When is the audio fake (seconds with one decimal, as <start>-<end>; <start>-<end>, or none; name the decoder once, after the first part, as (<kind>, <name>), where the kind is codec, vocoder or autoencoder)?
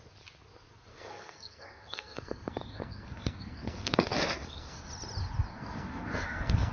0.9-4.9 (codec, SNAC); 5.5-6.7